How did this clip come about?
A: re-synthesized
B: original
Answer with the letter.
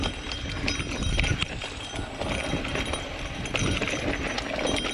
B